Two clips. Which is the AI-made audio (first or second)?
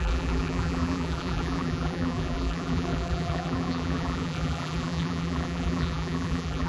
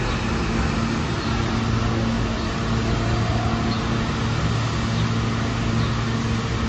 first